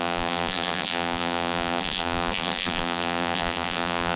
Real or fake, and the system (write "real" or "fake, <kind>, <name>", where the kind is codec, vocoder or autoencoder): fake, vocoder, BigVGAN v2